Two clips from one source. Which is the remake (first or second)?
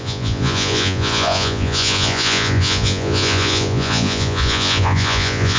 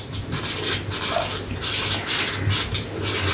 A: first